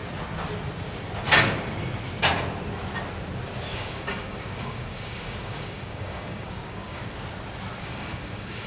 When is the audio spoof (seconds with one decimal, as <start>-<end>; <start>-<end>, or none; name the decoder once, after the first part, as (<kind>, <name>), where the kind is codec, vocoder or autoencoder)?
3.7-7.0 (codec, DAC); 7.8-8.7